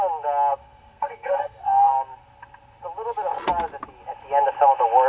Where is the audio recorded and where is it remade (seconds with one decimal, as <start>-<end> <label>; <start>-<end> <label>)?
0.0-0.6 recorded; 0.6-1.9 remade; 1.9-5.1 recorded